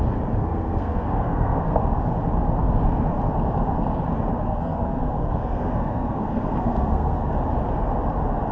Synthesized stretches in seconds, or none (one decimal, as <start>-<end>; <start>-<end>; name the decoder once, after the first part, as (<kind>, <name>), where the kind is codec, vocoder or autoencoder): 0.4-2.0 (codec, SNAC); 4.4-7.3